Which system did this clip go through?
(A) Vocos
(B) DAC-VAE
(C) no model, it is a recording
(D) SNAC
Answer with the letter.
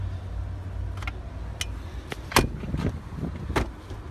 C